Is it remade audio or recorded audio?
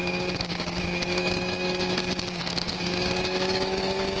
remade